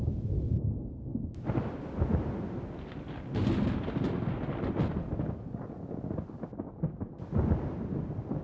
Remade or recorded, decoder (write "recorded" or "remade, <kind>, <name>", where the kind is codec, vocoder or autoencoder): recorded